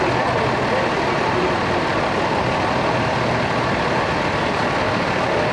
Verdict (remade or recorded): recorded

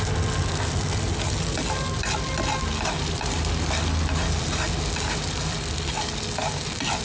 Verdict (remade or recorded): recorded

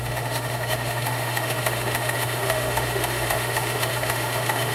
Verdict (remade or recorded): remade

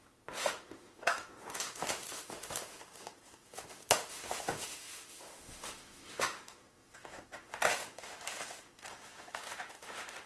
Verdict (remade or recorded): remade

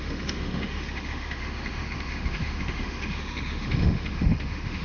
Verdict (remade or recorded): remade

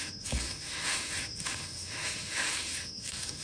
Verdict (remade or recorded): remade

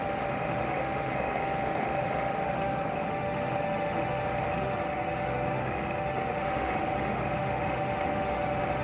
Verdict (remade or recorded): remade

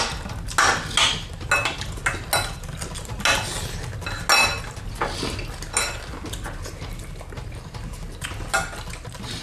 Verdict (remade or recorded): recorded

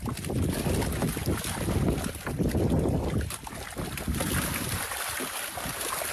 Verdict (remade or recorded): recorded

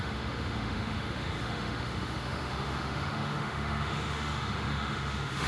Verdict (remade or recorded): remade